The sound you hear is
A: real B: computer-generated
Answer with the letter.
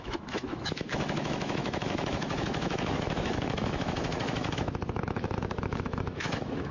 B